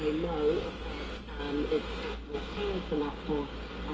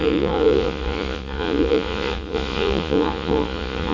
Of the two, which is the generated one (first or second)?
second